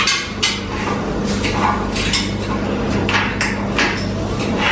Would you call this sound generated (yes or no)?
no